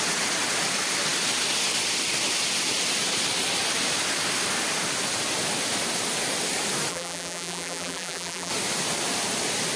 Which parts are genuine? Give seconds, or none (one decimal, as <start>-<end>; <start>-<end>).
0.0-6.9; 8.5-9.8